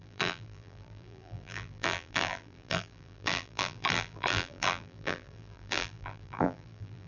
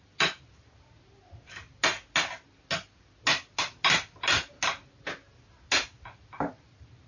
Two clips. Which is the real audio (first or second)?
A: second